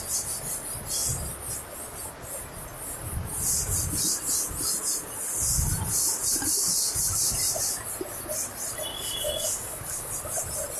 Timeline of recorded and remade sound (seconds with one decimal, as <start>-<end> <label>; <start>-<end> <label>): 0.0-8.9 recorded; 8.9-10.1 remade; 10.1-10.8 recorded